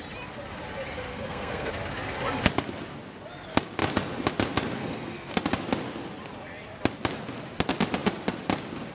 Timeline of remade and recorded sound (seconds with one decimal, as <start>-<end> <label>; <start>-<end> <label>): 0.0-1.1 recorded; 1.1-1.7 remade; 1.7-4.8 recorded; 4.8-5.3 remade; 5.3-8.9 recorded